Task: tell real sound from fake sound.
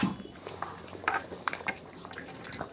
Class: fake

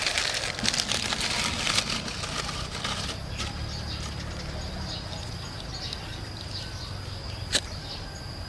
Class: real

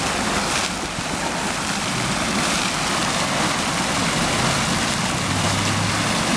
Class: real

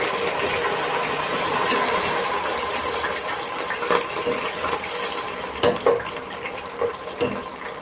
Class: fake